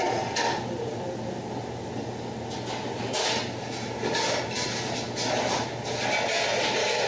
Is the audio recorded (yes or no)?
yes